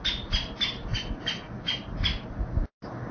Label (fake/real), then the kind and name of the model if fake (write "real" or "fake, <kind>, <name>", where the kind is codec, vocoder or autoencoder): real